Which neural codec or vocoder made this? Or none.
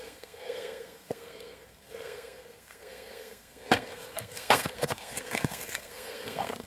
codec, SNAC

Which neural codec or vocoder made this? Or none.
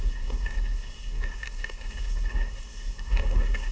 codec, SNAC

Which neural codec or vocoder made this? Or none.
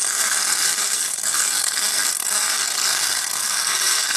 codec, SNAC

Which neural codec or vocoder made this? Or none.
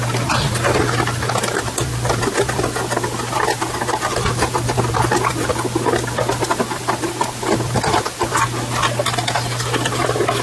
none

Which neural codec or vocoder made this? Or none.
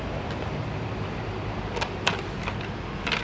none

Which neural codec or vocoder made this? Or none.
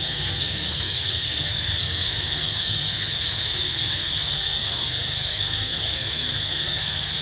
codec, SNAC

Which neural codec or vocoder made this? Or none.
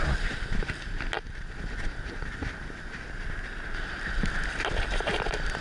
none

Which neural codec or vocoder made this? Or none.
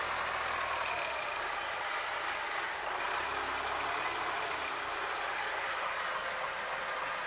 none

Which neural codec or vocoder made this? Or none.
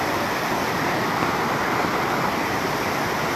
none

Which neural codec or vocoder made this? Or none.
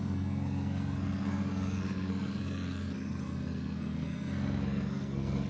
codec, SNAC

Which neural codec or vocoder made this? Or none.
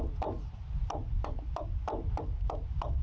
none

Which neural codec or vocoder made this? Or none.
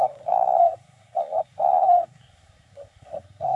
codec, SNAC